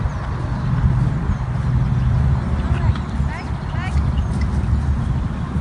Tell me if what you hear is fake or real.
real